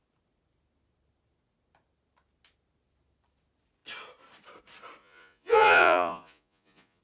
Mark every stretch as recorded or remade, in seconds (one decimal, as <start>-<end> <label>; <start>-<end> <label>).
0.0-5.0 recorded; 5.0-7.0 remade